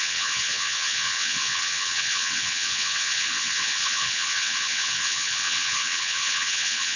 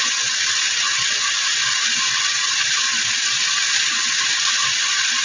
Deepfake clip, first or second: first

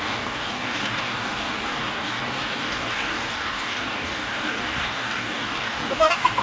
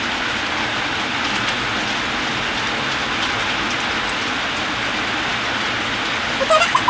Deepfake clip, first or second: first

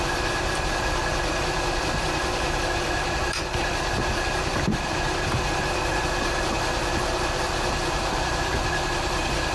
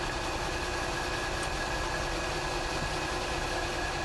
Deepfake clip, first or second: first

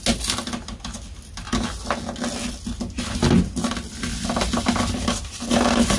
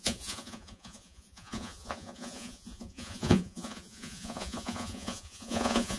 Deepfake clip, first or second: second